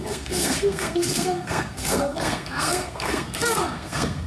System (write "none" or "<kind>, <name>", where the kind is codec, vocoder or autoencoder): codec, SNAC